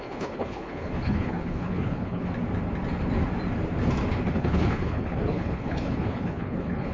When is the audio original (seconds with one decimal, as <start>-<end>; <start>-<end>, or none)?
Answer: 2.2-4.3